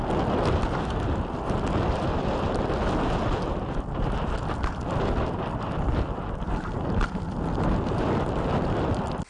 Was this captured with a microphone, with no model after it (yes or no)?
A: yes